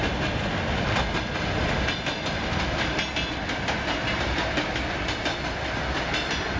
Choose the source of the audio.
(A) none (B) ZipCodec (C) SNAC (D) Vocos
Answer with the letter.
A